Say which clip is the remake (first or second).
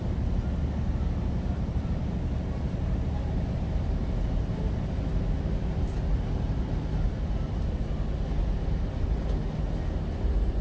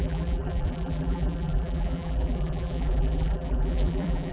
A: second